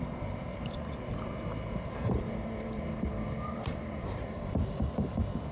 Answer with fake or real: fake